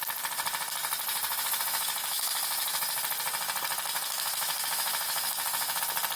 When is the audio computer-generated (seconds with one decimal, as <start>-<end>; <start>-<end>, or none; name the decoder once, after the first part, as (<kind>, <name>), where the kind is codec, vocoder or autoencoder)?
1.1-3.0 (autoencoder, DAC-VAE); 3.9-5.8